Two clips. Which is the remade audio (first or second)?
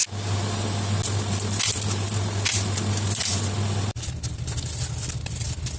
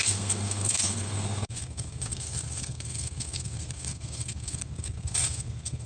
second